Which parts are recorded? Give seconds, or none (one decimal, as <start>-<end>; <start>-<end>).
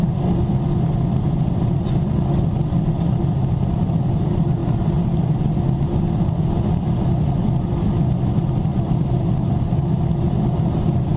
0.0-11.2